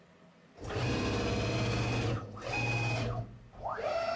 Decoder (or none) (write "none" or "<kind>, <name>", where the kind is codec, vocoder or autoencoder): none